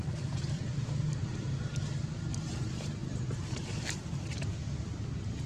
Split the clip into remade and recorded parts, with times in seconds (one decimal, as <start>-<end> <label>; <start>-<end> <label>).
0.0-0.6 remade; 0.6-1.0 recorded; 1.0-1.7 remade; 1.7-3.0 recorded; 3.0-4.4 remade; 4.4-5.5 recorded